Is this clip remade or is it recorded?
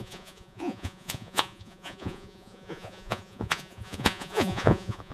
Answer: remade